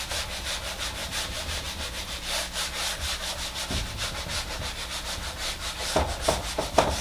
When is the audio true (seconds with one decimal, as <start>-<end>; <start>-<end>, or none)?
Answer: 0.0-1.0; 3.3-7.0